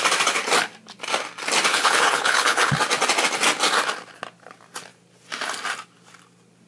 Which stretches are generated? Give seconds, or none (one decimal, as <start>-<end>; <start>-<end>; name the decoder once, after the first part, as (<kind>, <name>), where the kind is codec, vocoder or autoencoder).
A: 1.7-2.7 (codec, HILCodec)